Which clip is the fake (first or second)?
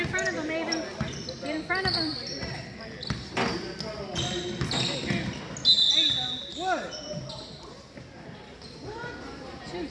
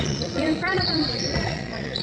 second